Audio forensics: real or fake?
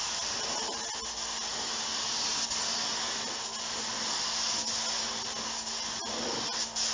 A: real